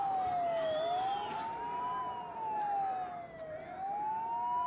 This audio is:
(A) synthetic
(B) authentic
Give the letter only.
B